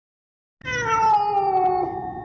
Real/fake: real